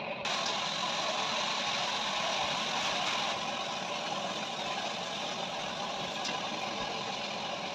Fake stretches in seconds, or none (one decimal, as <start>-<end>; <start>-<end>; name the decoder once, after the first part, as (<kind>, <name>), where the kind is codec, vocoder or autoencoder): none